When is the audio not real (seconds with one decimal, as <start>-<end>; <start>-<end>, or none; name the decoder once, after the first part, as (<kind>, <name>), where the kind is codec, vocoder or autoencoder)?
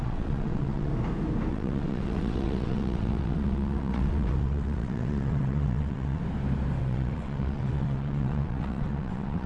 0.0-0.9 (vocoder, WaveNeXt); 1.5-6.2; 6.8-9.5